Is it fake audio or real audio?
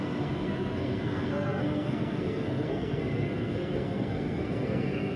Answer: fake